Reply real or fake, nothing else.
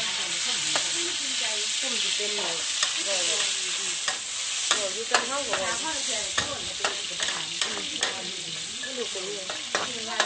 real